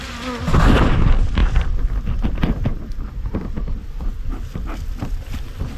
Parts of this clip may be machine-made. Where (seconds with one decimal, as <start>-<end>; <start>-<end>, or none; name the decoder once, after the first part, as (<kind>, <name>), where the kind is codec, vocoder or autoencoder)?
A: none